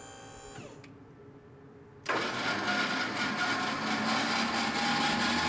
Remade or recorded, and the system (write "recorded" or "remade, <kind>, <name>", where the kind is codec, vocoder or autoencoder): recorded